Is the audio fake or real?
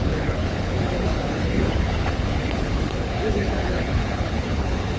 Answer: fake